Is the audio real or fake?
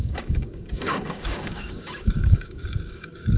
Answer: fake